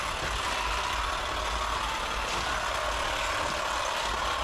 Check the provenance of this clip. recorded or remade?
recorded